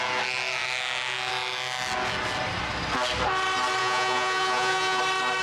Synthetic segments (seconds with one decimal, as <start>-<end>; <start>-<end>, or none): 3.8-5.0